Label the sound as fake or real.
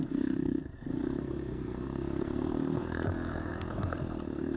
fake